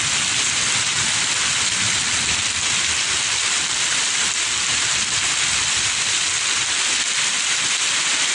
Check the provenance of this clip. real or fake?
fake